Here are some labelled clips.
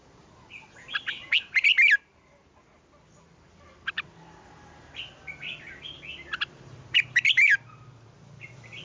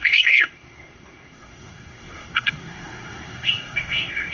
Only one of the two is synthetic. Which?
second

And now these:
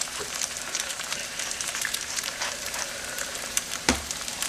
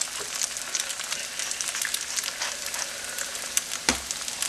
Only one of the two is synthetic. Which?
first